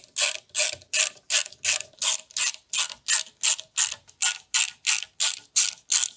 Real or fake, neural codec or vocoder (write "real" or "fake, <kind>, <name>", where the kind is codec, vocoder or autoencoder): real